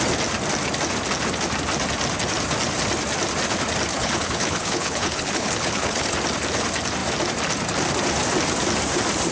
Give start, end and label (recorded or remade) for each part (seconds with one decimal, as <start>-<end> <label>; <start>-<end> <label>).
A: 0.0-3.9 recorded; 3.9-6.1 remade; 6.1-9.3 recorded